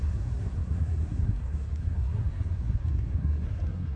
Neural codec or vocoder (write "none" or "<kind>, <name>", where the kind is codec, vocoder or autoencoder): codec, SNAC